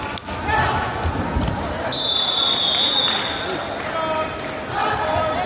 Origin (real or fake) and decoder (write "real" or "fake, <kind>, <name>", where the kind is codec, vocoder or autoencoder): real